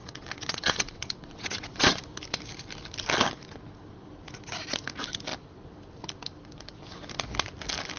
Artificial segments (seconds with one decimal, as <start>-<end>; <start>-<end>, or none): 0.0-2.0